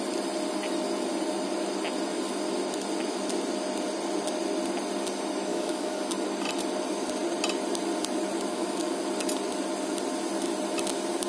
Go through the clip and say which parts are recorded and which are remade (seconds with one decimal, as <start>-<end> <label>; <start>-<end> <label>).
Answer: 0.0-5.5 recorded; 5.5-6.0 remade; 6.0-8.5 recorded; 8.5-9.0 remade; 9.0-11.3 recorded